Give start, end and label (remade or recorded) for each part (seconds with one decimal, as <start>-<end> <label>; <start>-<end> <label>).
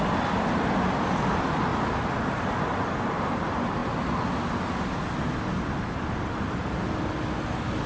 0.0-1.7 recorded; 1.7-3.4 remade; 3.4-7.9 recorded